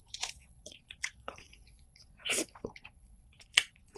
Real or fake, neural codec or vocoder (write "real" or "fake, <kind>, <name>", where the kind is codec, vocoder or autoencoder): fake, vocoder, Vocos